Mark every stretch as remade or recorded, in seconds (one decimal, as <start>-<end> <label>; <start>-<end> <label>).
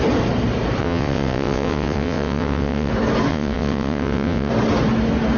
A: 0.0-0.8 recorded; 0.8-2.9 remade; 2.9-3.3 recorded; 3.3-4.5 remade; 4.5-5.4 recorded